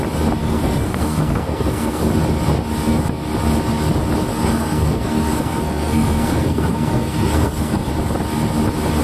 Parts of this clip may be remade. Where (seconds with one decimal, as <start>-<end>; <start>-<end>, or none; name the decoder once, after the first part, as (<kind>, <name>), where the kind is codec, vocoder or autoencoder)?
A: 0.4-2.1 (codec, SNAC); 4.3-7.9